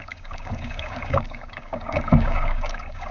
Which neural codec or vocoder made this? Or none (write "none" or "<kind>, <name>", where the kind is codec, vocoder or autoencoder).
codec, DAC